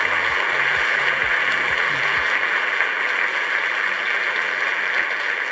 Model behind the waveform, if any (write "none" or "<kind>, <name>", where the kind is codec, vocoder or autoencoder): vocoder, BigVGAN v2